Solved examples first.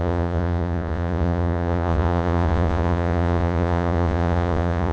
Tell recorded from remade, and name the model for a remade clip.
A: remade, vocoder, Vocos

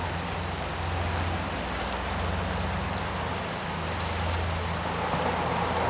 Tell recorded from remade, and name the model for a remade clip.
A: recorded